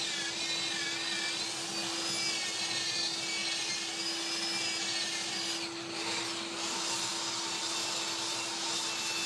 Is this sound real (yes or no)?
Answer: yes